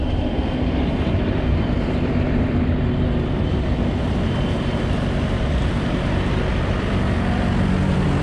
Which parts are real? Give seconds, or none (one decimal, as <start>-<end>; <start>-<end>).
none